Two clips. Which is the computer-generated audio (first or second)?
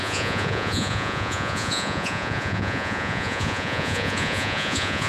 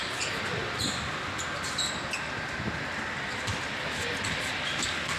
first